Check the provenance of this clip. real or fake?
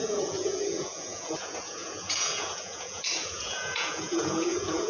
fake